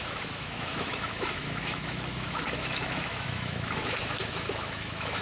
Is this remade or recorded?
remade